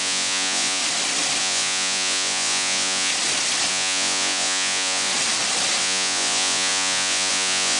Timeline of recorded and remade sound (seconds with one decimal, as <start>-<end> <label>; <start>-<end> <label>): 0.0-0.8 remade; 0.8-1.4 recorded; 1.4-3.1 remade; 3.1-3.7 recorded; 3.7-5.1 remade; 5.1-5.8 recorded; 5.8-7.8 remade